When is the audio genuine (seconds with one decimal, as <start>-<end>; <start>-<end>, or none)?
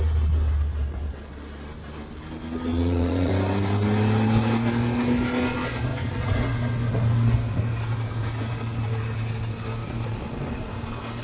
0.0-2.7; 3.3-11.2